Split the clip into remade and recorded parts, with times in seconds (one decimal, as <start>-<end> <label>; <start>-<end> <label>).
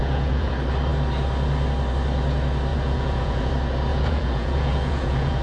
0.0-0.5 remade; 0.5-2.7 recorded; 2.7-3.5 remade; 3.5-3.9 recorded; 3.9-5.4 remade